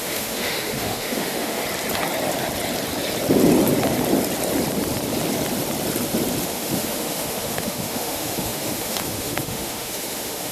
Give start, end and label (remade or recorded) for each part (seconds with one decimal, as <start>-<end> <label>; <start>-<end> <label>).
0.0-1.6 remade; 1.6-6.4 recorded; 6.4-10.5 remade